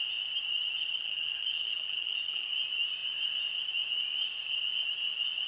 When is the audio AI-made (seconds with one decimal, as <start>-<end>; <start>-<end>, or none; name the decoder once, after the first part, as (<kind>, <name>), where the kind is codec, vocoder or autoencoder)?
0.8-2.5 (vocoder, HiFi-GAN)